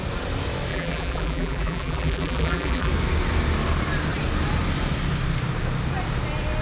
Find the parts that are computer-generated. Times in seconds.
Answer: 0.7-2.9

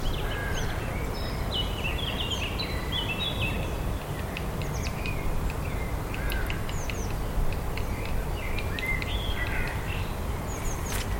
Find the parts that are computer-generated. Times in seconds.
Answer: 0.4-0.9

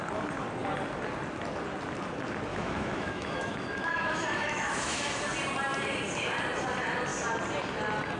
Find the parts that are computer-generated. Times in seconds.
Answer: 2.5-5.1

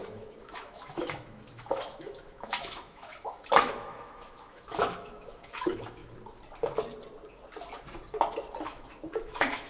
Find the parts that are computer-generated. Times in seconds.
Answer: 0.0-6.0; 8.6-9.7

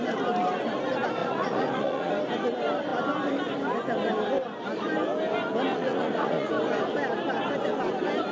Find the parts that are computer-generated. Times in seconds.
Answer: 1.2-2.1; 5.7-6.5

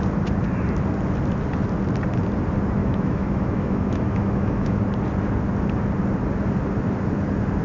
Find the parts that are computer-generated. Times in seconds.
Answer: 2.8-4.8

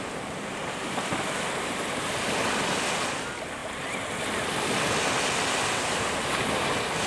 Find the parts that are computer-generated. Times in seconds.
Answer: none

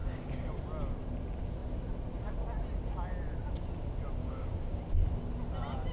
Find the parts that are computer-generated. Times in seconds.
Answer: 0.0-0.5; 4.2-4.8